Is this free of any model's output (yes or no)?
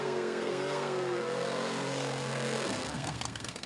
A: no